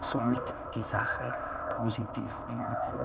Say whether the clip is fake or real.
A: fake